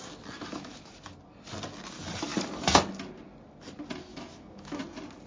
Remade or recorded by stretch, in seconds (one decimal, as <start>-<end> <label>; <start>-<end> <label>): 0.0-0.4 recorded; 0.4-0.9 remade; 0.9-4.1 recorded; 4.1-4.8 remade; 4.8-5.3 recorded

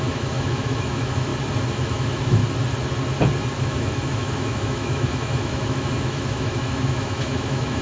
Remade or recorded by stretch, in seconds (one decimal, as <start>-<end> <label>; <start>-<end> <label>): 0.0-1.3 remade; 1.3-1.8 recorded; 1.8-2.4 remade; 2.4-3.6 recorded; 3.6-7.8 remade